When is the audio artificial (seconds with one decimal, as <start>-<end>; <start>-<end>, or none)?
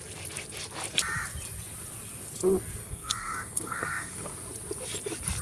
2.8-4.3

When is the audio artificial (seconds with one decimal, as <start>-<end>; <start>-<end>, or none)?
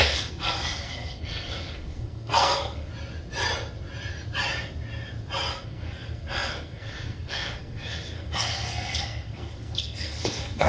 0.0-2.9; 5.5-10.7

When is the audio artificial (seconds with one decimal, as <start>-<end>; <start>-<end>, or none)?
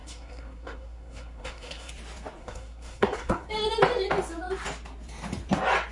0.0-1.9; 2.4-3.5